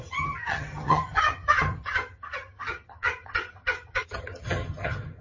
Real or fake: fake